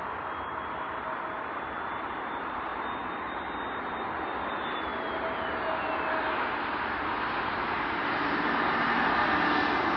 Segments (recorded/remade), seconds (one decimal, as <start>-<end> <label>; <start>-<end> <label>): 0.0-10.0 recorded